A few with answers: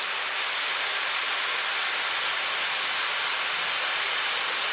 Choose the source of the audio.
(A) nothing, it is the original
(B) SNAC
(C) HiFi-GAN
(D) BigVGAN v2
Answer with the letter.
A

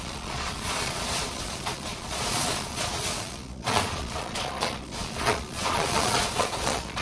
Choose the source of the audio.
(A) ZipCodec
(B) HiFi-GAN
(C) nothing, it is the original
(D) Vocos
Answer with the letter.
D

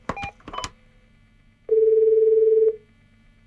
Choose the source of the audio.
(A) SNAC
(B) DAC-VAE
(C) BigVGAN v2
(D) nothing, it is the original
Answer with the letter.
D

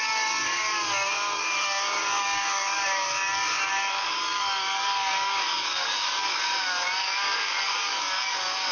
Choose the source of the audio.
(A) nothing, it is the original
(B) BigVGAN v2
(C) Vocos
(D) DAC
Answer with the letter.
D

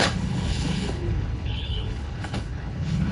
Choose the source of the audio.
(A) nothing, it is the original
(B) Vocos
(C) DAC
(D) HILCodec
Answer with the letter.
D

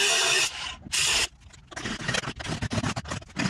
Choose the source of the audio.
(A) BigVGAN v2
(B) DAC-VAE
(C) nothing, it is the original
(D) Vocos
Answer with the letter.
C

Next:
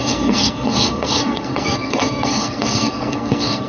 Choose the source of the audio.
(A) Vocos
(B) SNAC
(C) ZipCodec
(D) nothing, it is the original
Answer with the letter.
B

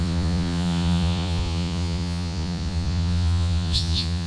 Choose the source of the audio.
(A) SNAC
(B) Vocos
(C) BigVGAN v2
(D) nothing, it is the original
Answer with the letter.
B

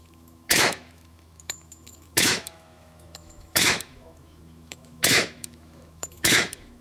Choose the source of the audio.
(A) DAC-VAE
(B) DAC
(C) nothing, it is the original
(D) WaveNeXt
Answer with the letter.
A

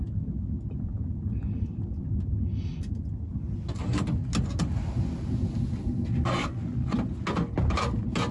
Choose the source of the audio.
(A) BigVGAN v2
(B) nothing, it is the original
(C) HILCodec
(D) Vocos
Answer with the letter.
B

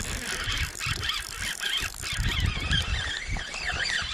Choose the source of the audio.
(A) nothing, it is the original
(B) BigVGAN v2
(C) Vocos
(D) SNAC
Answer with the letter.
A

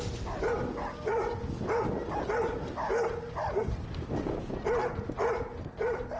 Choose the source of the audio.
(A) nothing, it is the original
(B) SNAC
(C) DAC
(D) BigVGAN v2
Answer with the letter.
A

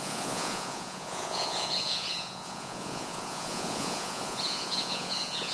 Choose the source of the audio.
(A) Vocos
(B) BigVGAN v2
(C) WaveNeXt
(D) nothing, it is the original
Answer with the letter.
A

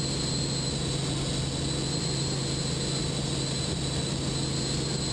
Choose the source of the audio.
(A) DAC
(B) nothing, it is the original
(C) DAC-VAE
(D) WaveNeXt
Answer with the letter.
B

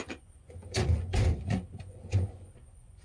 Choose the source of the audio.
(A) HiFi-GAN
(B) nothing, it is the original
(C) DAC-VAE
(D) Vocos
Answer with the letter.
D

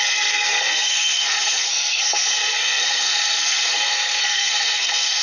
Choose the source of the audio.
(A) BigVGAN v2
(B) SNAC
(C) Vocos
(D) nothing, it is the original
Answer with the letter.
B